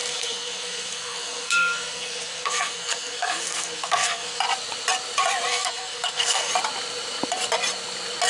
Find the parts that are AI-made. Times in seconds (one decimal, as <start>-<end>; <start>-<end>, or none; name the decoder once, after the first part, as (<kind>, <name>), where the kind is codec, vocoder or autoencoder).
0.0-4.4 (codec, SNAC); 5.5-6.5